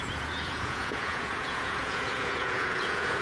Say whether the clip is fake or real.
fake